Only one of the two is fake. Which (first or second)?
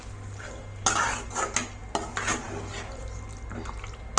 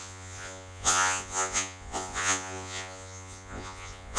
second